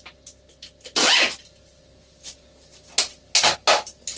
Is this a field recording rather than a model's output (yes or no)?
yes